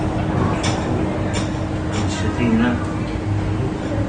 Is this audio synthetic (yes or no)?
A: no